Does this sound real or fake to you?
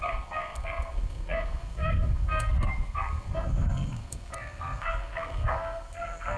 fake